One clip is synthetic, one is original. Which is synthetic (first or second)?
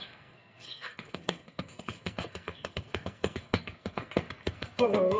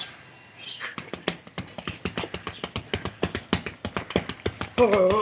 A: first